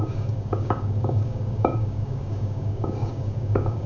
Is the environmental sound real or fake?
fake